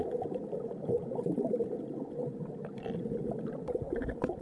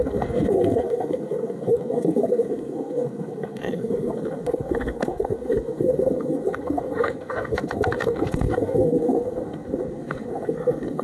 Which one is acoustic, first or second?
first